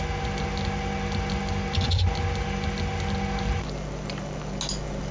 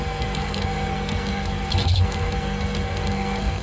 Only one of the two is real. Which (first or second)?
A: first